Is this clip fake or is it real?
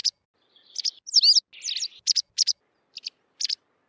real